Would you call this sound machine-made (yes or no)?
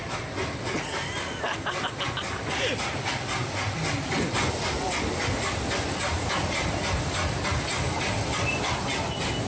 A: no